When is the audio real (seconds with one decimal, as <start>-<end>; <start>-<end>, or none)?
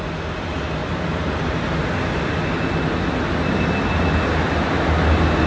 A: 0.0-5.5